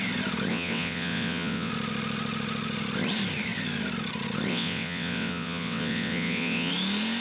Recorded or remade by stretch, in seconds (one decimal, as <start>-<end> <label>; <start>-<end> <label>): 0.0-0.5 recorded; 0.5-1.7 remade; 1.7-4.5 recorded; 4.5-6.7 remade; 6.7-7.2 recorded